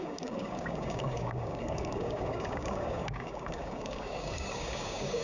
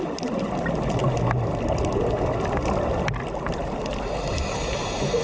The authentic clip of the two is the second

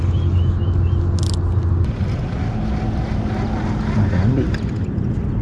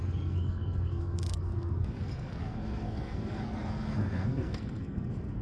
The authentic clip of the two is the first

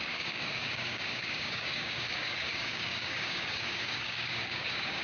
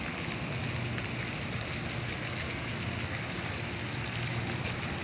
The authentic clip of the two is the second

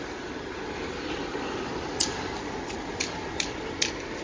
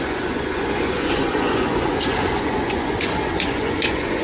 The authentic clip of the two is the first